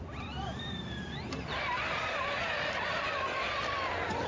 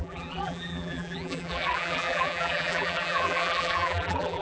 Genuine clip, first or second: first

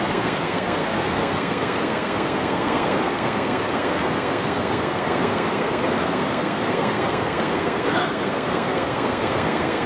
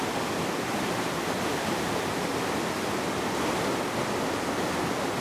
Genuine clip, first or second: second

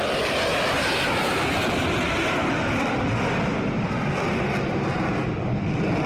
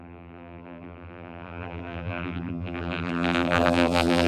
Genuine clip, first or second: first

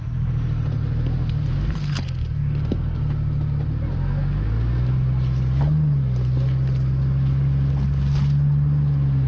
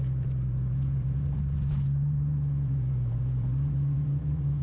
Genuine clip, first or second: first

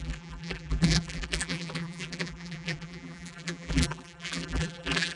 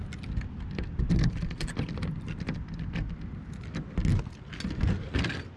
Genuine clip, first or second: second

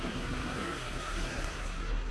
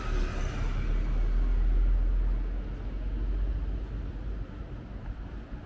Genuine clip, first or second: second